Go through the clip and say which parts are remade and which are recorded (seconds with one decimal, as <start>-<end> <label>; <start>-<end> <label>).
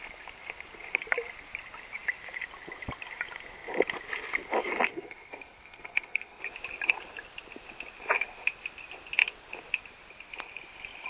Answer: 0.0-4.9 recorded; 4.9-6.4 remade; 6.4-11.1 recorded